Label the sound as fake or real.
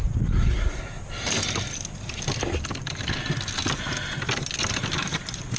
real